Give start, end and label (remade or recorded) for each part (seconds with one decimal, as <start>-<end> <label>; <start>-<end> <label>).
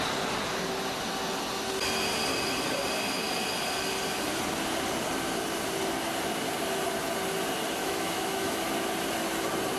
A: 0.0-7.8 recorded; 7.8-8.7 remade; 8.7-9.8 recorded